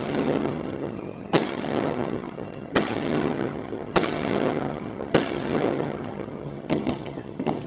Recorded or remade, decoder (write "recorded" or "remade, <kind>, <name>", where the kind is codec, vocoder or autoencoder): remade, vocoder, HiFi-GAN